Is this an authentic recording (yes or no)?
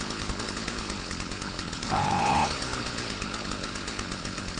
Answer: no